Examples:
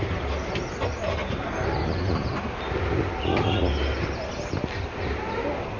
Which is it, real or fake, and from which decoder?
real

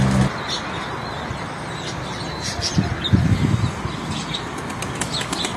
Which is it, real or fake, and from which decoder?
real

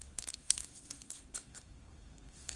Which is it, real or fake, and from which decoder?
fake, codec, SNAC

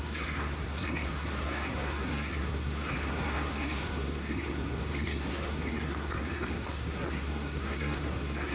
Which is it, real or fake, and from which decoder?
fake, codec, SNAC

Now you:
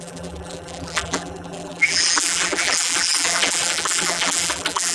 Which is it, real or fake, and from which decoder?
fake, vocoder, BigVGAN v2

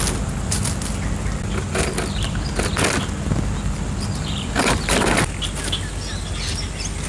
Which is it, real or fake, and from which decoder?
real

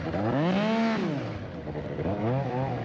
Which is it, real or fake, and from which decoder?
real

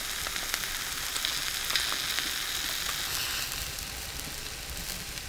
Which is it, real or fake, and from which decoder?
real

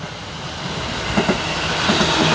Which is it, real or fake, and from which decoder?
real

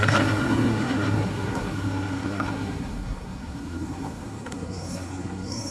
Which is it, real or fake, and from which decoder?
fake, codec, SNAC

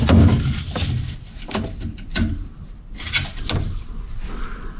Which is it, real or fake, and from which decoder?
real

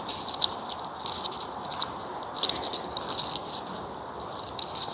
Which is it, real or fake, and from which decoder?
real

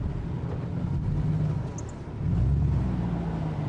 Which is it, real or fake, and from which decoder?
real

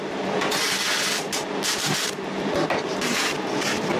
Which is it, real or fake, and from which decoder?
real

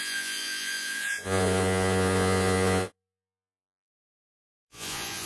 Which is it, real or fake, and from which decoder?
fake, vocoder, Vocos